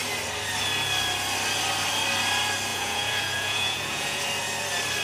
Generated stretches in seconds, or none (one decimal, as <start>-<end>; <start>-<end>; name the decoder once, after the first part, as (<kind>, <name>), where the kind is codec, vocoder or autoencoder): 2.7-4.2 (vocoder, Vocos)